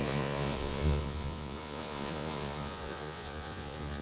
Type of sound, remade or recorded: remade